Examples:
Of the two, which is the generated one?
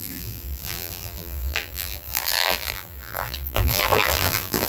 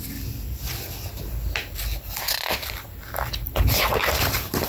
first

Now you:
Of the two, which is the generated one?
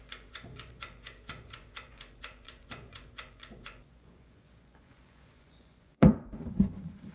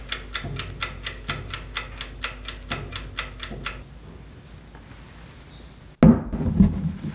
first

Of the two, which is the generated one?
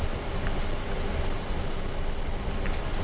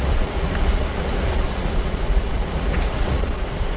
second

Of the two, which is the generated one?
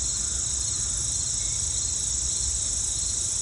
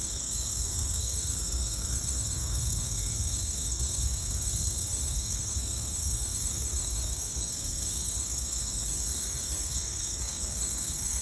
second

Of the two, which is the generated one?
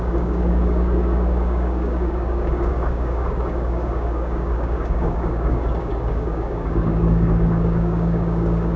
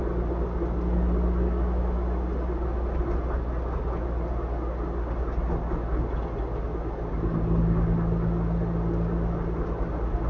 first